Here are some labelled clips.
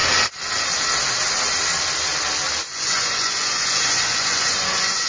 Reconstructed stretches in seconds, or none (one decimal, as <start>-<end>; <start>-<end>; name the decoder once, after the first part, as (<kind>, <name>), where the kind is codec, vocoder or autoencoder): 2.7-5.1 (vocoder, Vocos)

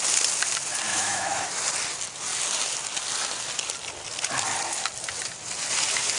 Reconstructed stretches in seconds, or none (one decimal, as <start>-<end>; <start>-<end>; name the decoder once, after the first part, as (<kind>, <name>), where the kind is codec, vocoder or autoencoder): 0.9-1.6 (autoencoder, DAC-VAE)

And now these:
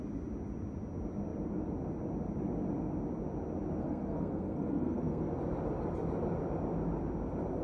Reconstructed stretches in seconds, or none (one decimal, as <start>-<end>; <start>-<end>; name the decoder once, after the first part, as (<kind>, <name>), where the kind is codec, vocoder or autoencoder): 3.8-5.3 (codec, SNAC)

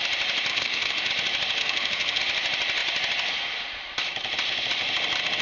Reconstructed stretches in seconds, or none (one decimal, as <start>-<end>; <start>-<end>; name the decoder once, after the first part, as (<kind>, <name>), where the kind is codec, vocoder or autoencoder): 0.5-1.1 (autoencoder, DAC-VAE); 1.6-2.2

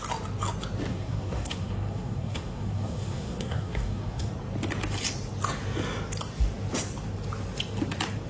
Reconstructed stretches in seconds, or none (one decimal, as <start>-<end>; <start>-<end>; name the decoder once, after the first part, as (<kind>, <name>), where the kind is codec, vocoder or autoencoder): 0.9-4.3 (codec, SNAC)

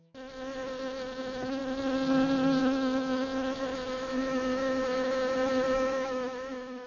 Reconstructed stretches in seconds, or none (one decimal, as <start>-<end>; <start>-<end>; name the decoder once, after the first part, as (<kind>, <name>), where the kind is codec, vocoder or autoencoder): 0.0-1.6 (autoencoder, DAC-VAE); 2.6-6.9

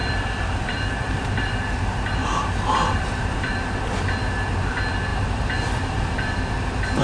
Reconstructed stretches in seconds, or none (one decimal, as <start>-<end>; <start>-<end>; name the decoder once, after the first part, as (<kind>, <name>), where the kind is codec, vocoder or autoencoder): 0.0-3.7 (vocoder, BigVGAN v2); 5.1-6.3

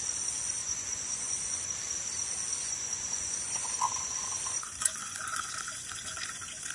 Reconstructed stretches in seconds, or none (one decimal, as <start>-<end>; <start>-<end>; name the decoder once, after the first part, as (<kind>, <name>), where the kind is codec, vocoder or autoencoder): 0.6-1.6 (vocoder, Vocos); 2.6-6.7